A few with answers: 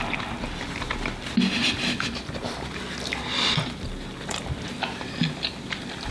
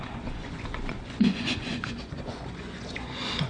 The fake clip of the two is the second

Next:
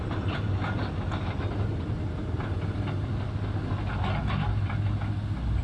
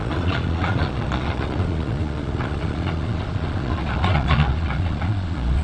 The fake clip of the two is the second